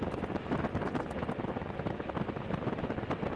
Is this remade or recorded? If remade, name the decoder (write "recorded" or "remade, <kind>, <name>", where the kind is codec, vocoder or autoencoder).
recorded